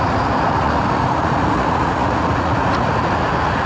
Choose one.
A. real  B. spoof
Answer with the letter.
B